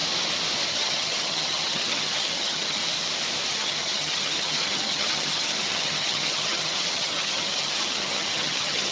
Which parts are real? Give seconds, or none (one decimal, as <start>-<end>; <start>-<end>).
0.0-0.7; 2.8-3.5